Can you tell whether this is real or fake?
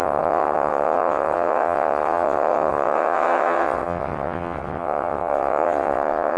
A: fake